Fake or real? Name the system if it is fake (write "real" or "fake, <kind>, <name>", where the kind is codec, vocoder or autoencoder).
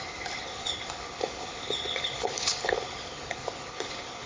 fake, codec, HILCodec